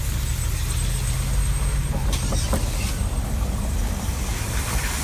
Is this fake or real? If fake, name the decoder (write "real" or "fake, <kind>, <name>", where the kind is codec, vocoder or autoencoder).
real